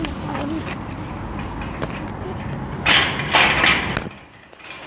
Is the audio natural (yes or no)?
yes